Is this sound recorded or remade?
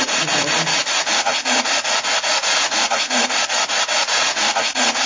remade